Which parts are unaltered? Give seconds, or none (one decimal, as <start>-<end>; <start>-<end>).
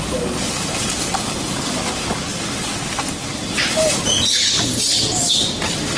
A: 0.0-3.2; 4.0-5.2